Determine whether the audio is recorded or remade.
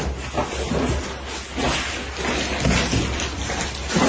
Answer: recorded